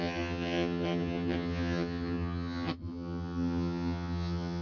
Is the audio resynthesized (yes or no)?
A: yes